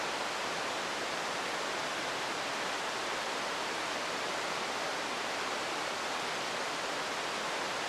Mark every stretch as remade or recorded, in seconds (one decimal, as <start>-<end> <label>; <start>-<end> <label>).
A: 0.0-1.8 recorded; 1.8-4.3 remade; 4.3-4.9 recorded; 4.9-6.1 remade; 6.1-7.9 recorded